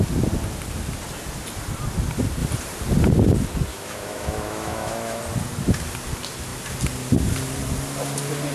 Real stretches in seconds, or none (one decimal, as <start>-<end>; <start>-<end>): 0.0-3.7; 5.2-8.5